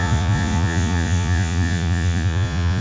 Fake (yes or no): yes